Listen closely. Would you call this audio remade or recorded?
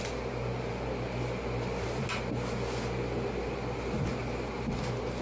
recorded